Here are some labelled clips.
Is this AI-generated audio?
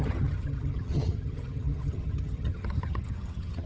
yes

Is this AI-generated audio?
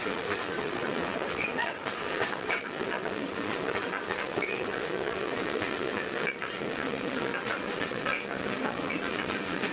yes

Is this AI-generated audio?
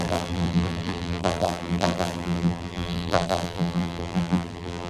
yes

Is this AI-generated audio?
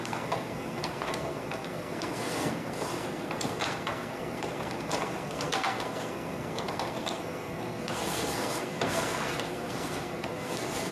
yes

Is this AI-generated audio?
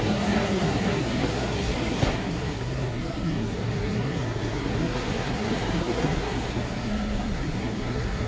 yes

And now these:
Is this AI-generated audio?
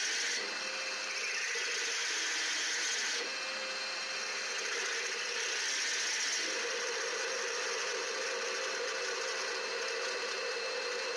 no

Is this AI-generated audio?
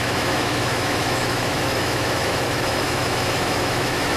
yes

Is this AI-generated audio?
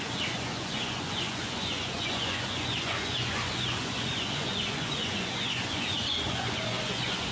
yes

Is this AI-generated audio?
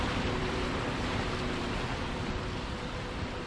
yes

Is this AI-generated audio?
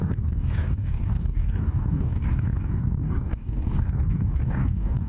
yes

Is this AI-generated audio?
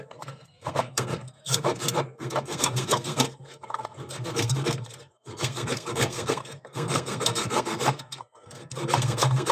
yes